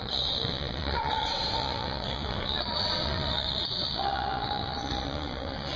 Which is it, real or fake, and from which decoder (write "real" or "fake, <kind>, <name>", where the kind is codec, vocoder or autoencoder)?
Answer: fake, vocoder, WaveNeXt